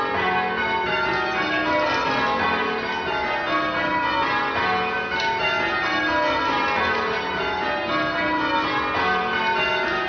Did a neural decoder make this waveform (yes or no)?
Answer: no